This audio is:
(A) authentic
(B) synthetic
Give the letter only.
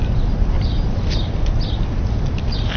A